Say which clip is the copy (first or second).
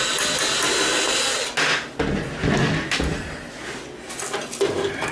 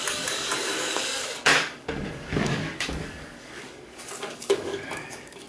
second